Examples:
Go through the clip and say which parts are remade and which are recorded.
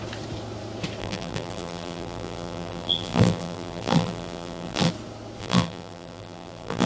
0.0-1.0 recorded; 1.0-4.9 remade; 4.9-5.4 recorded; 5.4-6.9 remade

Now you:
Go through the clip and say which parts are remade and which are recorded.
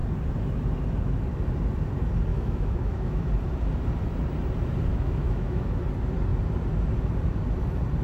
0.0-2.3 recorded; 2.3-3.3 remade; 3.3-4.9 recorded; 4.9-5.8 remade; 5.8-8.0 recorded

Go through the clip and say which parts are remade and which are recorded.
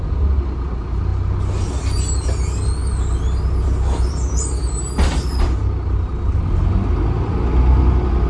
0.0-8.3 recorded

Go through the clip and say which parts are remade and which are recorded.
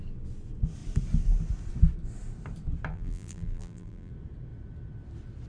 0.0-2.9 recorded; 2.9-4.1 remade; 4.1-5.5 recorded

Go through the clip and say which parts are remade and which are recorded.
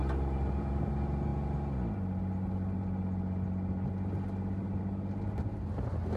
0.0-6.2 recorded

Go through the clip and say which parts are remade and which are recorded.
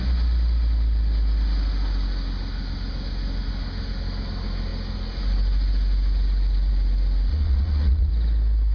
0.0-7.3 recorded; 7.3-8.1 remade; 8.1-8.7 recorded